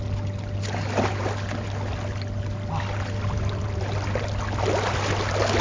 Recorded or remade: recorded